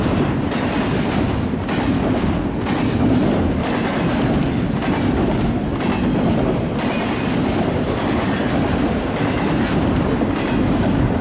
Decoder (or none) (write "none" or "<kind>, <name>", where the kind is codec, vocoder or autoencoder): none